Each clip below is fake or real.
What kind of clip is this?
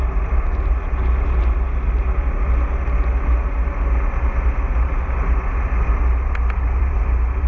real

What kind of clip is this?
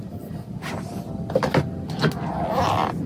real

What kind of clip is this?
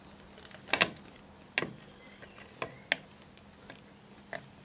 real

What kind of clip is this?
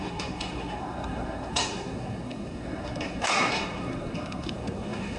fake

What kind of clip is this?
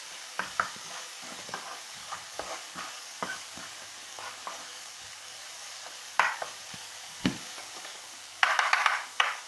fake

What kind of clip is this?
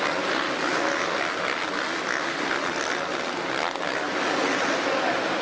real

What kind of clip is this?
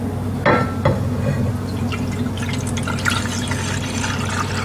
real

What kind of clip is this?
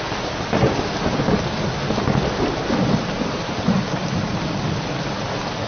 real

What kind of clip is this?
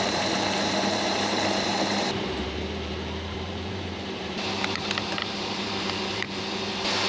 fake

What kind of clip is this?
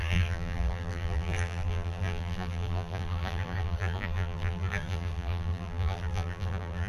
fake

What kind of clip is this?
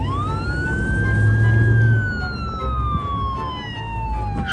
real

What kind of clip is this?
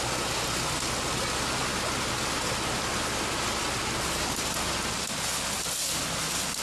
real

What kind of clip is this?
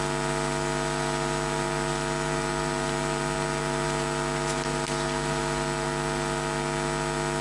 real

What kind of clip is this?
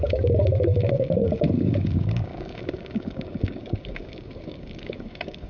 fake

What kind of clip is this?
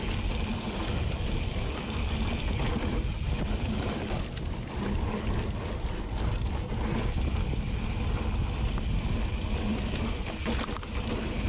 real